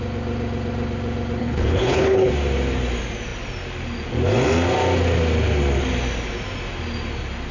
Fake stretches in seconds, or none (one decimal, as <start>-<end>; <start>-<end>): 1.4-2.3